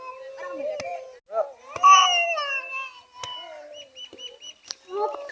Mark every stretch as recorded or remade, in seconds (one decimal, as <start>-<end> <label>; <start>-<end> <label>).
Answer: 0.0-5.3 recorded